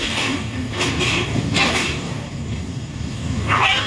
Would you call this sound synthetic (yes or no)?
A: yes